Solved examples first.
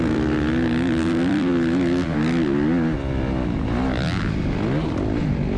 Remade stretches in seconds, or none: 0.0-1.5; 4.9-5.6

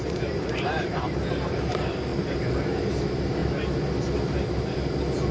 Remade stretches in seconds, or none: 0.0-3.4

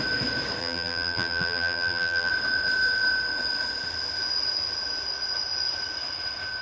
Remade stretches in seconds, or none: 0.6-2.3